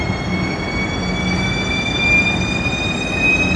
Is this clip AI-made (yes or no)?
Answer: no